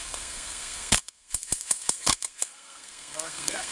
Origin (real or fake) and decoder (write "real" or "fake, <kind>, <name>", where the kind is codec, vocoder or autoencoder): fake, codec, SNAC